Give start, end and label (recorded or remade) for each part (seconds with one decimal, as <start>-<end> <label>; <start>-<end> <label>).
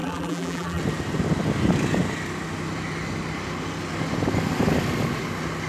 0.0-0.8 remade; 0.8-5.7 recorded